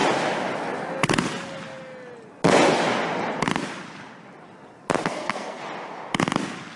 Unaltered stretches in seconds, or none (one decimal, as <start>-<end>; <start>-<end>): 0.0-5.0; 5.6-6.8

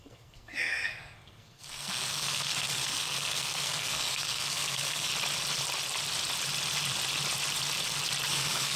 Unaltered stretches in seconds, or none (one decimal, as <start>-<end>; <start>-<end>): 5.1-8.3

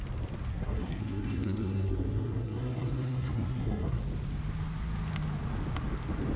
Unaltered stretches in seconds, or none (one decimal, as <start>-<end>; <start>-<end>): 0.0-0.5; 4.0-6.4

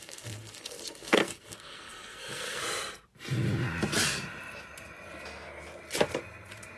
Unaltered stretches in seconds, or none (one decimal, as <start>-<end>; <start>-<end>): 2.6-6.8

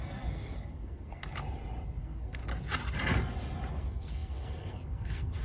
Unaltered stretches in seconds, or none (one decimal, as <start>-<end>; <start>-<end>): 1.2-2.0; 2.4-3.7

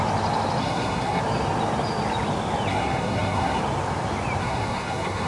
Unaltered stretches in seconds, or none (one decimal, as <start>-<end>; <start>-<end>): 0.0-0.6; 1.2-2.7; 3.6-4.4

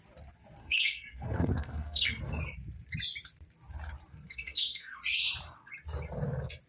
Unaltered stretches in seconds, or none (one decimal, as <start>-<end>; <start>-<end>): 0.0-0.6; 2.2-4.1; 5.0-6.7